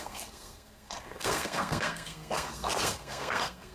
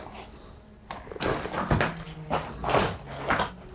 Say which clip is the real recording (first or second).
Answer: second